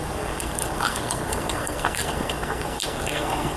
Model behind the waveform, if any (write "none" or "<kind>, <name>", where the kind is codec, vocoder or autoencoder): codec, SNAC